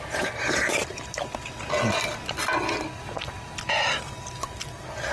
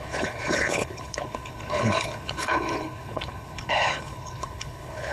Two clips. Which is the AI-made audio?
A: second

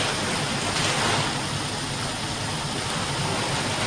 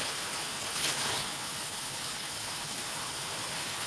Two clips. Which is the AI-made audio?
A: second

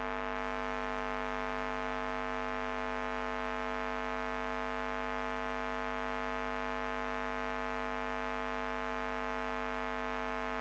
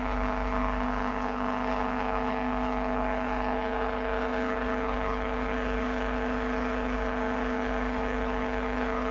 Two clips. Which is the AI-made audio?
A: second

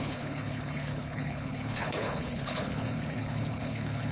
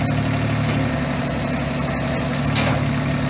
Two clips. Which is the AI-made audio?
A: first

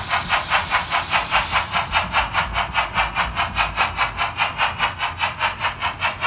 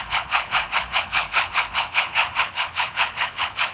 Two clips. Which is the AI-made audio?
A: second